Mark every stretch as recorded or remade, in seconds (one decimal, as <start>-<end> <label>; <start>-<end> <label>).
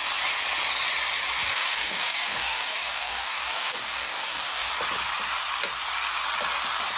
0.0-1.5 recorded; 1.5-4.7 remade; 4.7-7.0 recorded